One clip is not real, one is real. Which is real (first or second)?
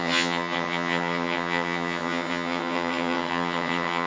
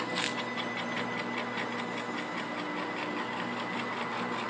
second